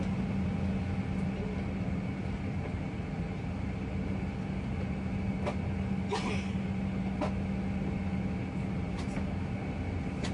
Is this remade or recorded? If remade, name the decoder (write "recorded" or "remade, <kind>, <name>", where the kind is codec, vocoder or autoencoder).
recorded